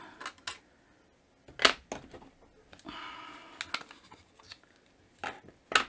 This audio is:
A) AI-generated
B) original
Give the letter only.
B